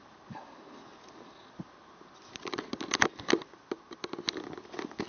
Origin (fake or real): real